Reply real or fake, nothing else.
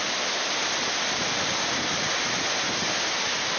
real